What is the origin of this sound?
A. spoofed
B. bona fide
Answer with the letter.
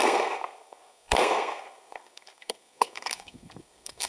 A